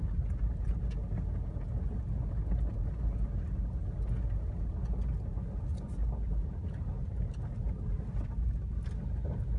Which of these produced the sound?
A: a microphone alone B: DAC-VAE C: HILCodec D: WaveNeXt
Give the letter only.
A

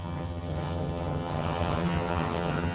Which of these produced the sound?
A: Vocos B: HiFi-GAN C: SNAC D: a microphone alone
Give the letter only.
B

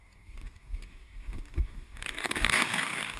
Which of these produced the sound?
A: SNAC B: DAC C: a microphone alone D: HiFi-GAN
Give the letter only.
B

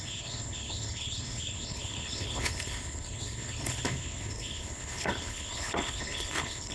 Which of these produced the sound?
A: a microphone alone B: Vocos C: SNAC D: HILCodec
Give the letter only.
D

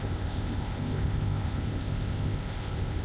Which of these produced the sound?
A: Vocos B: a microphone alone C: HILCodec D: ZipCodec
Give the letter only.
D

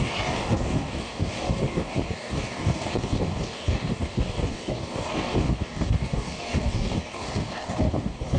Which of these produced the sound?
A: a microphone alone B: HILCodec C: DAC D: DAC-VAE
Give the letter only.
C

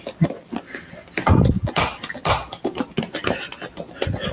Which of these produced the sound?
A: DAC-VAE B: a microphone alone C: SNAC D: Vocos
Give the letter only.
B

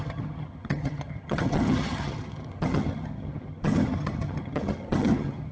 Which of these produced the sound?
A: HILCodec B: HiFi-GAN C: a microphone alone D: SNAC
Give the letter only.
B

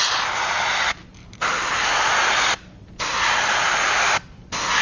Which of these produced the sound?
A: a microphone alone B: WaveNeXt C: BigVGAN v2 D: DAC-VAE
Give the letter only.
A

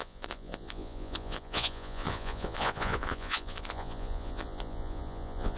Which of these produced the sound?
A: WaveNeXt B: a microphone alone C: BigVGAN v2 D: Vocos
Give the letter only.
D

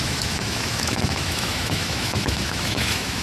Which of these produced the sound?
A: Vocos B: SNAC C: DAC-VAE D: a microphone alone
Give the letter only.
C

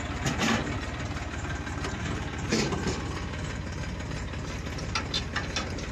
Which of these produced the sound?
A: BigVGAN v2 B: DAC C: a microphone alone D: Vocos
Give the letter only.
C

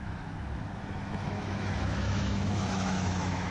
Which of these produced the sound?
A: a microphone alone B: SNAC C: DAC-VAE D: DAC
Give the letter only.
C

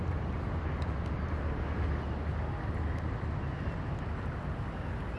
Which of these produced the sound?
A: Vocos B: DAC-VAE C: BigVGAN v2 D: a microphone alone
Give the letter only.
D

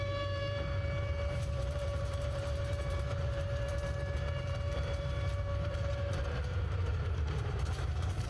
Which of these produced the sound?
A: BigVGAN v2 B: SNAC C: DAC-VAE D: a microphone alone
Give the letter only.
A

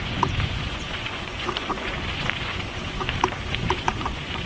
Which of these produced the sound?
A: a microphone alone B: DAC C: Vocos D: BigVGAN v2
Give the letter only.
C